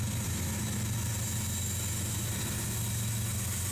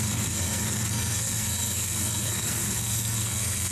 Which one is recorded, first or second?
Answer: first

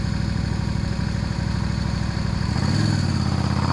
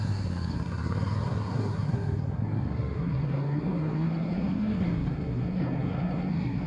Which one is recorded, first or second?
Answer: first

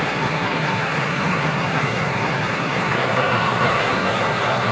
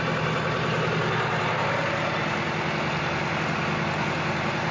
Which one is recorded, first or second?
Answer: second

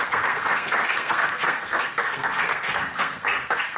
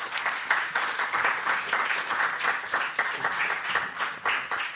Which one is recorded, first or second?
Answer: second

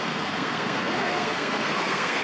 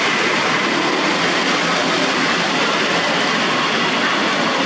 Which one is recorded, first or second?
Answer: second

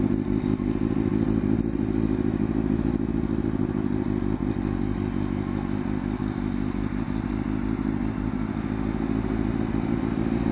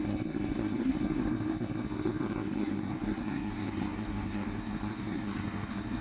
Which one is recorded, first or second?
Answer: first